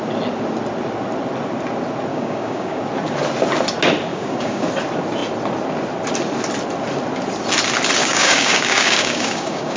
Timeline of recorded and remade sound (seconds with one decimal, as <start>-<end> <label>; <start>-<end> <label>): 0.0-2.1 recorded; 2.1-2.8 remade; 2.8-4.1 recorded; 4.1-4.7 remade; 4.7-8.0 recorded; 8.0-9.8 remade